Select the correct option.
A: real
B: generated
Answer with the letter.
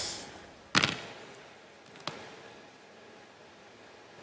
A